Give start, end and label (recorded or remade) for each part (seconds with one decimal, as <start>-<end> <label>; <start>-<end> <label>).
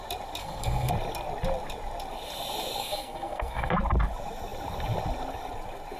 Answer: 0.0-0.4 recorded; 0.4-0.9 remade; 0.9-2.8 recorded; 2.8-3.7 remade; 3.7-6.0 recorded